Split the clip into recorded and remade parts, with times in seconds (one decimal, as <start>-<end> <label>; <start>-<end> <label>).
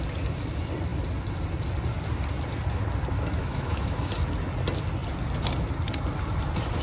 0.0-3.4 recorded; 3.4-4.1 remade; 4.1-6.8 recorded